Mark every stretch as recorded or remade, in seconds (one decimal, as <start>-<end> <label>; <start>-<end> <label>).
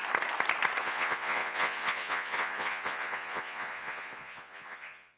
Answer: 0.0-0.8 recorded; 0.8-5.2 remade